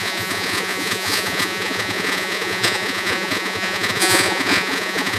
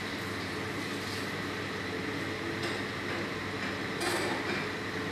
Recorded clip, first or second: second